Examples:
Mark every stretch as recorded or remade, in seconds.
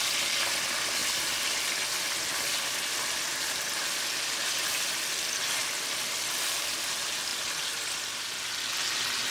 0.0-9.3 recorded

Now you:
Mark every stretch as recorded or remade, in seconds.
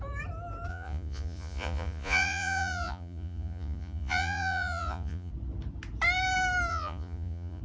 0.0-0.7 recorded; 0.7-5.3 remade; 5.3-6.7 recorded; 6.7-7.6 remade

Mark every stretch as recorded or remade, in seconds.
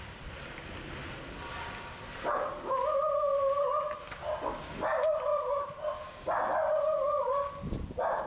0.0-5.3 recorded; 5.3-6.8 remade; 6.8-8.3 recorded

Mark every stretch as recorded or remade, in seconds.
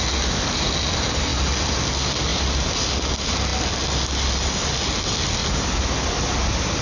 0.0-6.8 recorded